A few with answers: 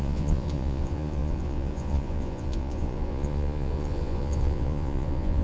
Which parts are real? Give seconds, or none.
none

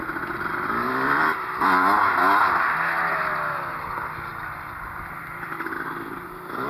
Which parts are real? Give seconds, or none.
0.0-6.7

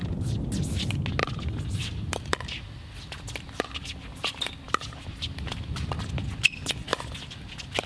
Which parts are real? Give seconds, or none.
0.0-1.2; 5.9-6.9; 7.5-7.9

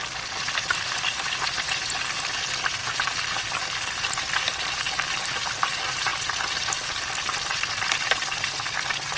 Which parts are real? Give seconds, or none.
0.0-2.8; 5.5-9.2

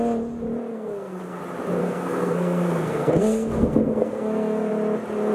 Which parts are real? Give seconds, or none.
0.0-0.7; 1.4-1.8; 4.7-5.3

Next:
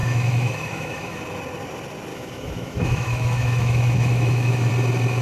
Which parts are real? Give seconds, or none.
1.2-2.1; 4.7-5.2